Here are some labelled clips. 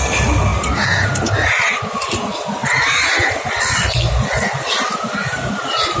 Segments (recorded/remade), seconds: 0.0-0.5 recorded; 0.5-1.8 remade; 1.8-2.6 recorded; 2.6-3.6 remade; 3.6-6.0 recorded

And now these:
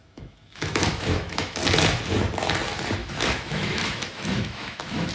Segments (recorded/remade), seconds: 0.0-1.6 remade; 1.6-3.0 recorded; 3.0-5.1 remade